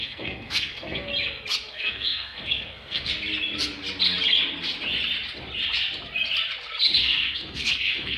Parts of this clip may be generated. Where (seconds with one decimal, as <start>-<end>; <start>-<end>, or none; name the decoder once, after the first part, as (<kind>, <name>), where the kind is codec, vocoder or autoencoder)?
0.0-1.1 (codec, SNAC); 1.7-3.1; 7.0-8.2